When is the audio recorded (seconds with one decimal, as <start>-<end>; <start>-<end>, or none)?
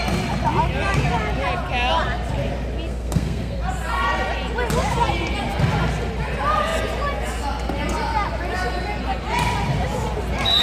0.0-2.9; 3.6-10.6